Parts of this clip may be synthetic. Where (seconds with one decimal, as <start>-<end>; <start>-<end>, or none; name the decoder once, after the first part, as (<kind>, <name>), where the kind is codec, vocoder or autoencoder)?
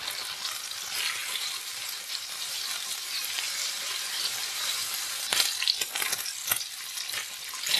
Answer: 1.2-5.3 (vocoder, BigVGAN v2)